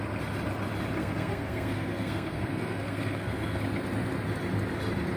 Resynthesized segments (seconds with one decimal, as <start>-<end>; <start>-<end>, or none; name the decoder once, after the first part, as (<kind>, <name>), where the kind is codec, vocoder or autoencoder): 1.0-3.6 (codec, SNAC)